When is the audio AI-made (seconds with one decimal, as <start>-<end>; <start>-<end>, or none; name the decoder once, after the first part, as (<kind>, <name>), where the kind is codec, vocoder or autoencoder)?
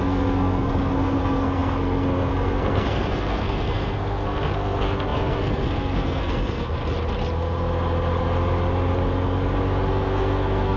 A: 0.0-6.8 (codec, SNAC); 9.9-10.8